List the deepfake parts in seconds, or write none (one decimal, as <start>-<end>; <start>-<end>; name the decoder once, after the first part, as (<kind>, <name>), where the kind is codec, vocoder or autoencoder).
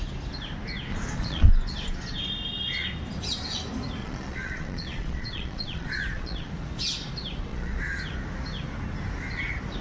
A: 0.9-1.5 (vocoder, Vocos); 4.0-6.5; 7.5-8.0